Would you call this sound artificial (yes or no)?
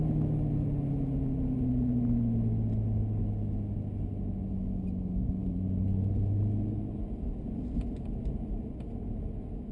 no